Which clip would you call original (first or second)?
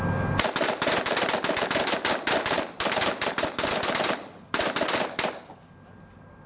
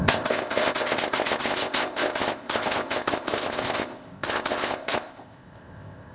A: first